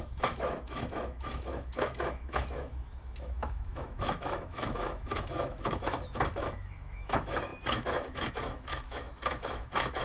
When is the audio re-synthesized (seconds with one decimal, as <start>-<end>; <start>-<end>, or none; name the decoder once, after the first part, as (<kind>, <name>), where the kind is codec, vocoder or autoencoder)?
0.0-10.0 (autoencoder, DAC-VAE)